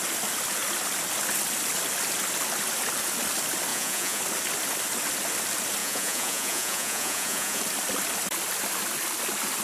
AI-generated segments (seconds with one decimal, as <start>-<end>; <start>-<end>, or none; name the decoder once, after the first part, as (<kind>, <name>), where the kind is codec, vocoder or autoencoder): 3.7-4.2 (vocoder, Vocos); 5.8-7.6